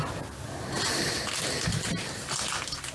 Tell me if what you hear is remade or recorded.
recorded